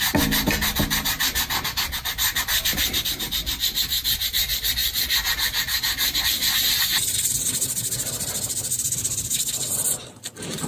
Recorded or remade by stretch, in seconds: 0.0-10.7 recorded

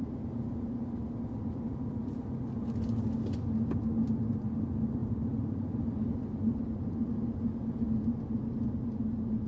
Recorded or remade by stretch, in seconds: 0.0-9.5 recorded

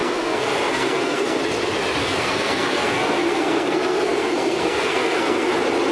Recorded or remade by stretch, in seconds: 0.0-1.4 remade; 1.4-2.0 recorded; 2.0-5.5 remade; 5.5-5.9 recorded